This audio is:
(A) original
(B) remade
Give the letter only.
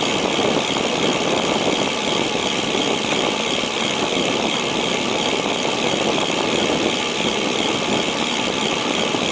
B